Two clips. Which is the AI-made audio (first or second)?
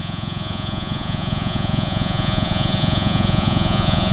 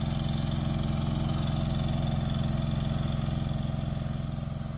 first